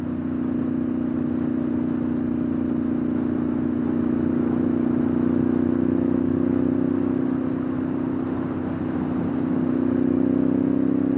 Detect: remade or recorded recorded